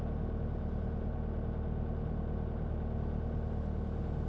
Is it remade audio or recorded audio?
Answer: recorded